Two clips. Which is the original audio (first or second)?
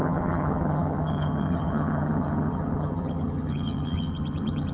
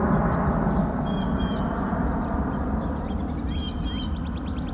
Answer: second